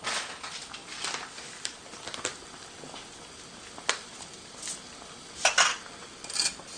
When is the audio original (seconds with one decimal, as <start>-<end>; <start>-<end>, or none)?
0.0-6.8